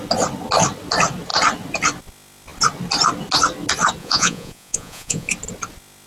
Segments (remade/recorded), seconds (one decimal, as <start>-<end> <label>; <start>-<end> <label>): 0.0-4.0 recorded; 4.0-5.3 remade; 5.3-6.1 recorded